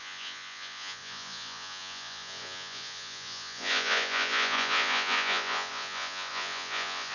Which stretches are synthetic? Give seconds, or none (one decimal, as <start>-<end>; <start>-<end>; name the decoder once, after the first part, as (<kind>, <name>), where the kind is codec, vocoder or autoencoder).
0.0-7.1 (vocoder, Vocos)